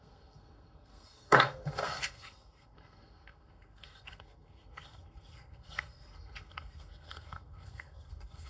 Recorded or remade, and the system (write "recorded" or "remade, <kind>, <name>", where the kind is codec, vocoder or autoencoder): remade, codec, SNAC